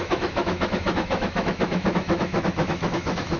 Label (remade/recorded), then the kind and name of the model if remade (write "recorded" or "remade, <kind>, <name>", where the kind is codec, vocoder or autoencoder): remade, autoencoder, DAC-VAE